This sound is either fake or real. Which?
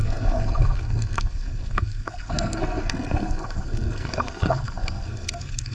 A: fake